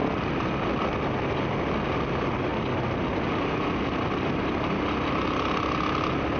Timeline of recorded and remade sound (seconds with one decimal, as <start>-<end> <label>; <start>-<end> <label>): 0.0-6.4 recorded